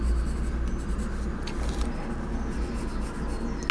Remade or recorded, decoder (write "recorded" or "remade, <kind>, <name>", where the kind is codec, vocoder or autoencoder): recorded